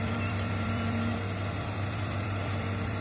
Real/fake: fake